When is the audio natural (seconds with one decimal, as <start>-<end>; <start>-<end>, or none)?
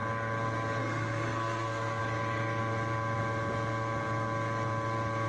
0.0-0.8; 2.0-5.3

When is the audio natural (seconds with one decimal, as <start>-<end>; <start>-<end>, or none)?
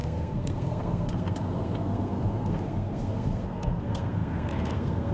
none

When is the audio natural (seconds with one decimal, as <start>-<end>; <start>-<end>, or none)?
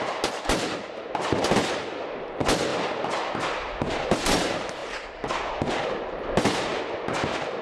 0.0-7.6